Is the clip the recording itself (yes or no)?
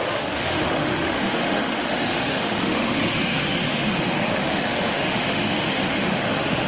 no